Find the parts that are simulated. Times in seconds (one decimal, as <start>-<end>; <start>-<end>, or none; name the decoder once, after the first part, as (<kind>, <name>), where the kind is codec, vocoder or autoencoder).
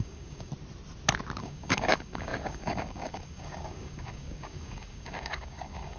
0.0-0.5 (codec, DAC); 1.4-6.0